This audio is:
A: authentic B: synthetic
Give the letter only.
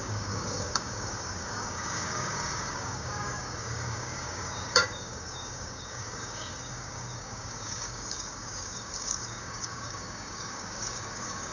B